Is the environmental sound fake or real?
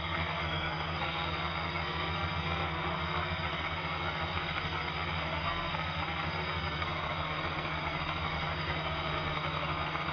fake